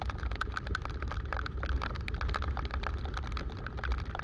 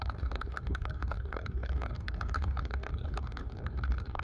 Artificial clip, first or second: second